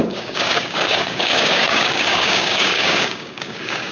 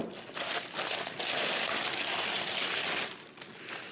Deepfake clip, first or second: first